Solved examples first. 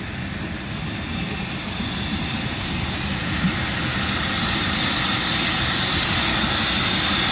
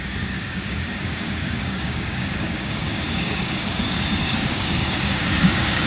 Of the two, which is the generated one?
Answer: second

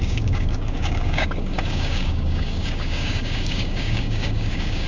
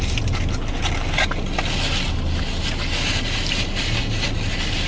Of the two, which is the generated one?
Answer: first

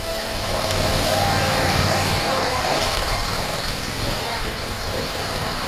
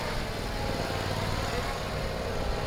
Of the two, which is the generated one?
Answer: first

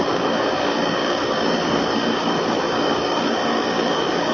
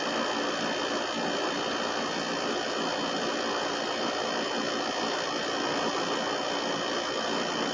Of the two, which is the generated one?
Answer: first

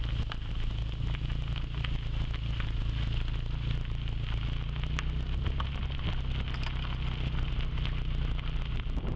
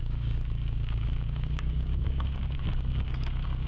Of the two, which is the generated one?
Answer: second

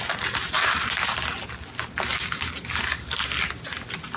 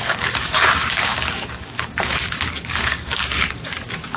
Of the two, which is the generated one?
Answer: second